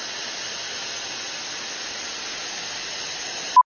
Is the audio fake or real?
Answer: real